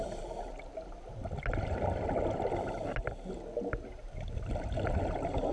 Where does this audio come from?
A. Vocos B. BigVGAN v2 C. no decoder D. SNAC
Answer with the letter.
C